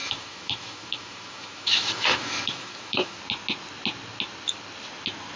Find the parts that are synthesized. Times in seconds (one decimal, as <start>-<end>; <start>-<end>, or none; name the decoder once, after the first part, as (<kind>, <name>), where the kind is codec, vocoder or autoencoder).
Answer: 0.0-3.2 (autoencoder, DAC-VAE)